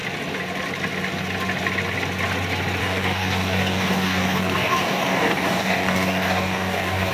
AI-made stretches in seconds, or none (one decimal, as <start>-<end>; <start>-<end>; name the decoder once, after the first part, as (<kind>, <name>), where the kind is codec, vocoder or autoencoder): 2.8-7.1 (codec, DAC)